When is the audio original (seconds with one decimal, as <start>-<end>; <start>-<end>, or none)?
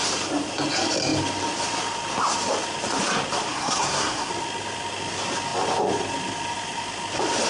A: 0.0-3.5; 4.3-7.5